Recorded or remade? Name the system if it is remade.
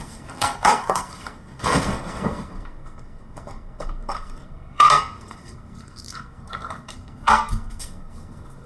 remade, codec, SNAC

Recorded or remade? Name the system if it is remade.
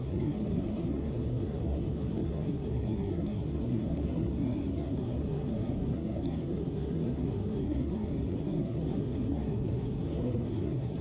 remade, codec, SNAC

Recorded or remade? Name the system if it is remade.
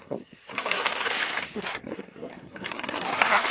remade, codec, SNAC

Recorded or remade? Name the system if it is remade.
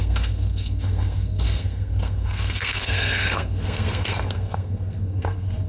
remade, codec, SNAC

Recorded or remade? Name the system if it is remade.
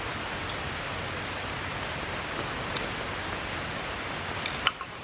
recorded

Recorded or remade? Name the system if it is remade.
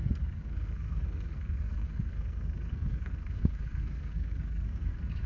remade, codec, SNAC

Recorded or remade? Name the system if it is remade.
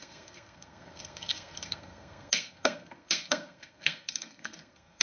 remade, codec, SNAC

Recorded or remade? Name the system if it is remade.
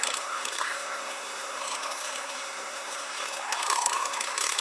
remade, codec, SNAC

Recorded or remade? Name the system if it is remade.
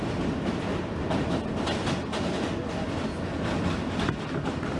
recorded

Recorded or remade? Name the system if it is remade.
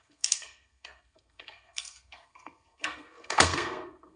remade, codec, SNAC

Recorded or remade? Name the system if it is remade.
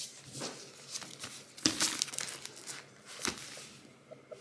recorded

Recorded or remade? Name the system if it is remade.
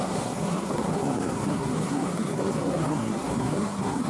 remade, codec, SNAC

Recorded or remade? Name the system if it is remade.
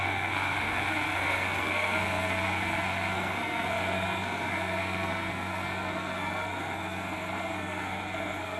remade, codec, SNAC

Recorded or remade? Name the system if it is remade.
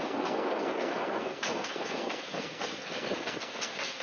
remade, codec, SNAC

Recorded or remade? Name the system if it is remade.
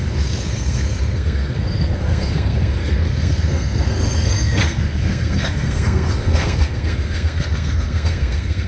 remade, codec, SNAC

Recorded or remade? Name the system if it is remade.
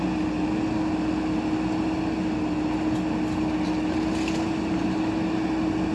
recorded